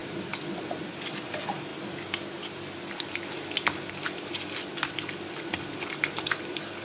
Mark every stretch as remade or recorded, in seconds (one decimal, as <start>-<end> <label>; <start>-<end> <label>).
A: 0.0-0.8 recorded; 0.8-1.7 remade; 1.7-3.9 recorded; 3.9-6.8 remade